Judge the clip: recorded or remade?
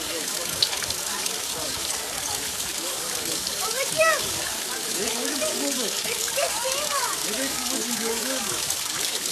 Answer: remade